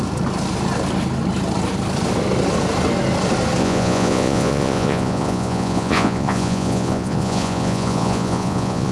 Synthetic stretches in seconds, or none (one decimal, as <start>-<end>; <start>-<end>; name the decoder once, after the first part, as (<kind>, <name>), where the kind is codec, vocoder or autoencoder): 3.6-8.9 (vocoder, Vocos)